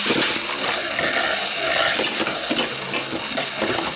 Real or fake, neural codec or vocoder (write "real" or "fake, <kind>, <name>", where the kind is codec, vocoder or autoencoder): real